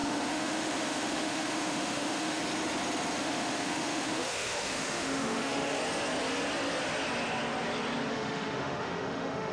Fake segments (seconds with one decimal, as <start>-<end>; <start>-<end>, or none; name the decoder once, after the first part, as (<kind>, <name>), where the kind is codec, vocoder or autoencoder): 0.0-2.4 (autoencoder, DAC-VAE); 3.2-5.8; 8.1-9.5